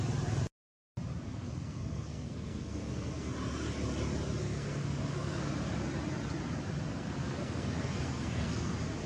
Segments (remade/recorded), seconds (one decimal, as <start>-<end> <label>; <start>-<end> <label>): 0.0-1.3 recorded; 1.3-3.3 remade; 3.3-4.4 recorded; 4.4-5.5 remade; 5.5-6.9 recorded; 6.9-8.7 remade; 8.7-9.1 recorded